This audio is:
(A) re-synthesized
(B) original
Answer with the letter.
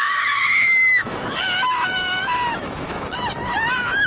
A